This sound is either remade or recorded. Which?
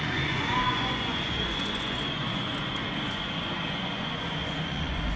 remade